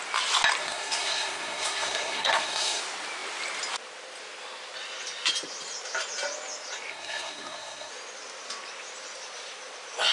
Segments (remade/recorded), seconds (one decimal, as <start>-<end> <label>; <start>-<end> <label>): 0.0-0.6 recorded; 0.6-2.8 remade; 2.8-6.9 recorded; 6.9-7.9 remade; 7.9-10.1 recorded